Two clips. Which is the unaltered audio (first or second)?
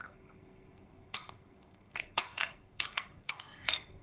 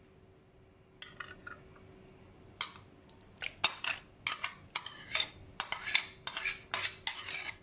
second